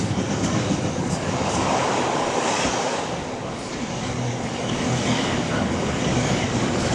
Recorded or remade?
remade